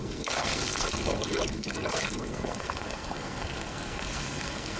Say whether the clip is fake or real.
fake